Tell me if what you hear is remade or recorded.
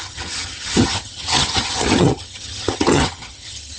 remade